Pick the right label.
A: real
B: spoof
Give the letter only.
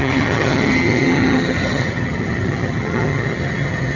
B